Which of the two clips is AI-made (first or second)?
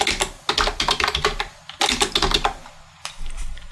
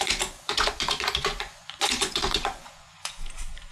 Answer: second